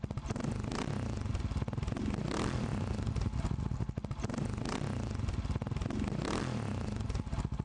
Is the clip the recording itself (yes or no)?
yes